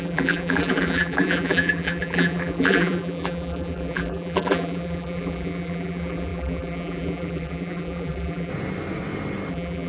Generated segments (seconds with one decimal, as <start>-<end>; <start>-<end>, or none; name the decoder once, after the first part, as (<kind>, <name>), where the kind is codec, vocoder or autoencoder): 0.0-8.5 (vocoder, BigVGAN v2); 9.5-9.9